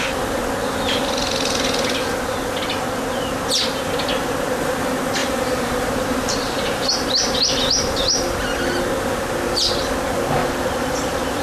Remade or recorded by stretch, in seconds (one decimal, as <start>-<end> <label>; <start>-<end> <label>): 0.0-5.2 recorded; 5.2-6.9 remade; 6.9-10.4 recorded; 10.4-11.4 remade